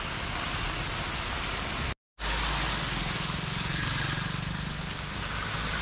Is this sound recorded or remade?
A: recorded